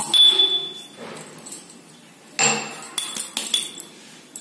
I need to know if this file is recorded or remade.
recorded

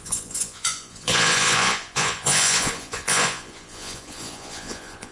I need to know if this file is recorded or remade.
remade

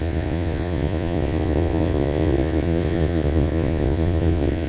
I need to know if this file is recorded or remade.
remade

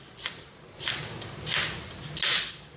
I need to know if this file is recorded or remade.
recorded